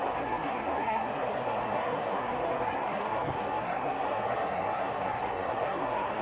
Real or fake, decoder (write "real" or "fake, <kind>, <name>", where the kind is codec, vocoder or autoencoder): fake, codec, SNAC